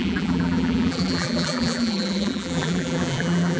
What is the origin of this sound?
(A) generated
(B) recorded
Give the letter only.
A